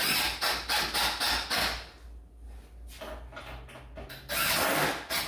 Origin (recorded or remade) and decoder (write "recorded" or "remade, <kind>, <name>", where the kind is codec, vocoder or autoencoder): recorded